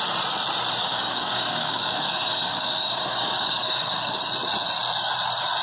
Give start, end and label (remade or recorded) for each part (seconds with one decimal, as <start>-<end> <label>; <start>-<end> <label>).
0.0-0.8 recorded; 0.8-4.2 remade; 4.2-5.6 recorded